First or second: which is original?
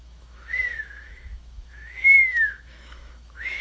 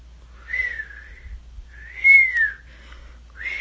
second